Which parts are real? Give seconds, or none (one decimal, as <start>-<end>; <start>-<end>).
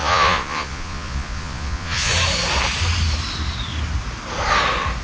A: 2.1-5.0